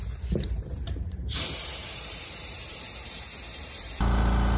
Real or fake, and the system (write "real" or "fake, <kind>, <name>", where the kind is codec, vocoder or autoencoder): fake, vocoder, BigVGAN v2